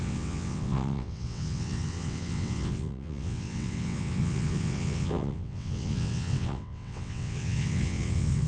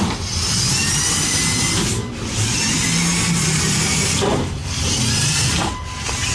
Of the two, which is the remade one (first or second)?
first